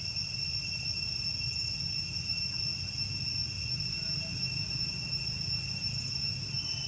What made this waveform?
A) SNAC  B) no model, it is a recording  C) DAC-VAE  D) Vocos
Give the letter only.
B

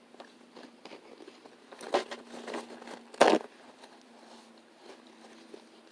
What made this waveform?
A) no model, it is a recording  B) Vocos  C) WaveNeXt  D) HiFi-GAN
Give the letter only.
A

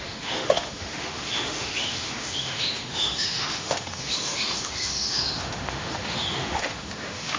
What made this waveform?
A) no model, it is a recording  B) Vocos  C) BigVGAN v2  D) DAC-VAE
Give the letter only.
D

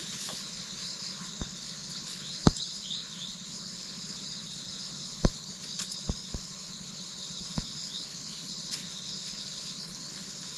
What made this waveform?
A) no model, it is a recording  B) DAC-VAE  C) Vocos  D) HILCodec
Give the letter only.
D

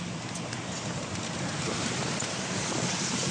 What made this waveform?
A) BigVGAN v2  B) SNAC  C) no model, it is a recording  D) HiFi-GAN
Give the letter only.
C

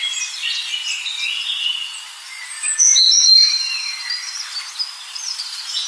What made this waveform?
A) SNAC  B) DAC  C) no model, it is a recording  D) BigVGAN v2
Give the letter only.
C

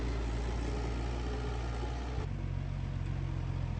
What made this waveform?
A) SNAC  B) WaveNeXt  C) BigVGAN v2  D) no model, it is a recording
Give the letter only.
D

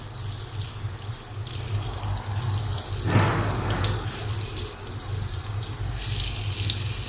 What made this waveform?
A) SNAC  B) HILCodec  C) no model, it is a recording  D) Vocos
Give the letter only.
C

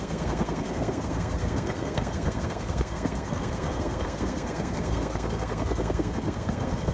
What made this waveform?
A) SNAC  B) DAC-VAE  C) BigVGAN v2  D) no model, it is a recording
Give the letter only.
A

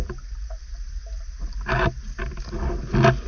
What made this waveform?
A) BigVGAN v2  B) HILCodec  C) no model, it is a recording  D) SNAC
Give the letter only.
C